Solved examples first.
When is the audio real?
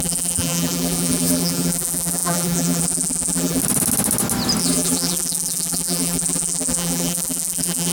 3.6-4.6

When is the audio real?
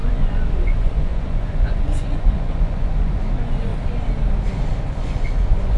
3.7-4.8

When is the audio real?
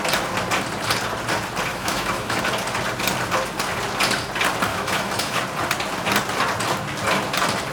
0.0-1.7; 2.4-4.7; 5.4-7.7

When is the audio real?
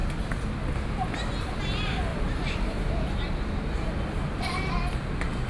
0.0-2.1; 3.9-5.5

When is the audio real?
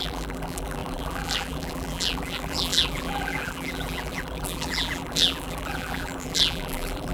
none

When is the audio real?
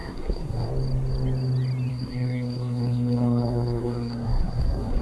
0.7-1.9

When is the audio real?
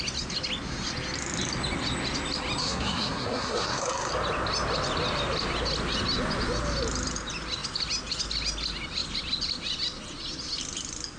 0.0-2.6; 4.1-11.2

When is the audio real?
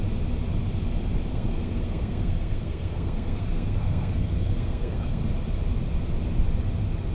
0.0-1.3; 5.2-7.1